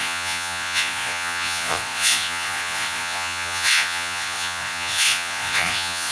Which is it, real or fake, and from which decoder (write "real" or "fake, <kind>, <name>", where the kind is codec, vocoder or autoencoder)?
fake, vocoder, Vocos